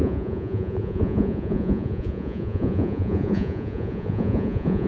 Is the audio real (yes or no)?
no